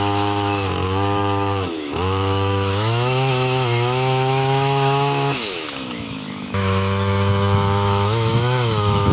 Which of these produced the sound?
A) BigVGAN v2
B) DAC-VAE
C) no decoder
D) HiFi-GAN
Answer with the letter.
B